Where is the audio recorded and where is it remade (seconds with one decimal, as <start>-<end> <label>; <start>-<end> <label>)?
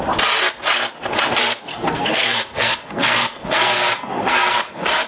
0.0-1.7 recorded; 1.7-5.1 remade